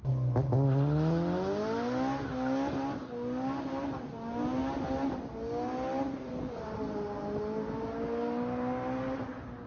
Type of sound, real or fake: real